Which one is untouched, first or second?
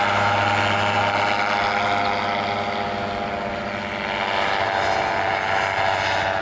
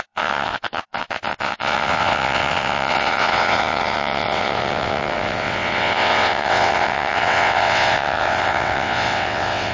first